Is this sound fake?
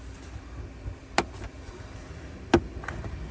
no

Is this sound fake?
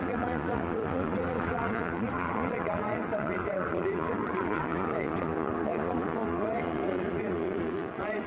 yes